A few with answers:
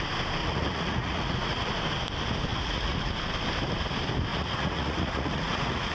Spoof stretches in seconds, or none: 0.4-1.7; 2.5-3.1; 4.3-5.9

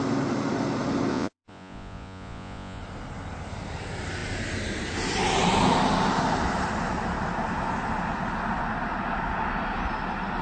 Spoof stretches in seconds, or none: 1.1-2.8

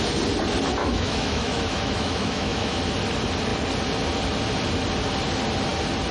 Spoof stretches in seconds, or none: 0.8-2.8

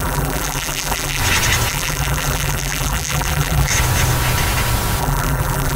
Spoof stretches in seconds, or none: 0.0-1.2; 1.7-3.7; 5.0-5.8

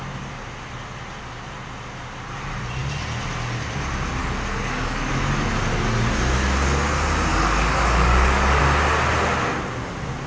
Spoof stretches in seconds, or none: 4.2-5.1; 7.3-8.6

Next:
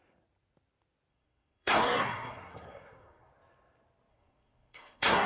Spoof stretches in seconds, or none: 1.1-3.3; 4.1-5.3

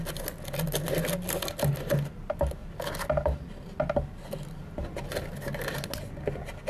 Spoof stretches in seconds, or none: none